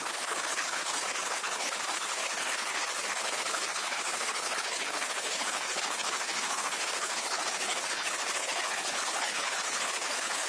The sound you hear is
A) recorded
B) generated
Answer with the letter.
B